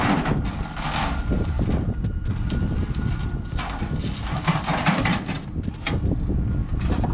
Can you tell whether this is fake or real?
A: real